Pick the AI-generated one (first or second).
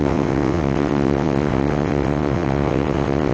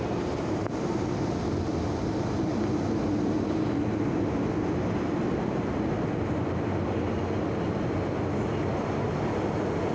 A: first